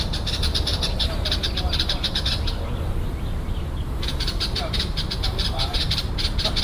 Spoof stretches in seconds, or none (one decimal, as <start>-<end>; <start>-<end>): 0.7-2.2; 3.1-6.1